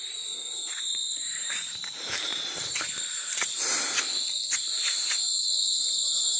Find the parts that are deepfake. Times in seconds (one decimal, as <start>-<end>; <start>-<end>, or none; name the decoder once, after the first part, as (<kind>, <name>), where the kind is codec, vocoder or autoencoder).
0.0-2.3 (vocoder, BigVGAN v2); 5.8-6.4